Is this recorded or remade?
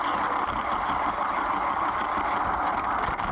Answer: recorded